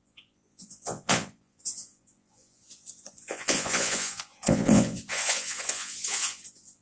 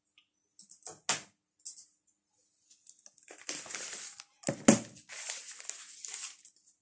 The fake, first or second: first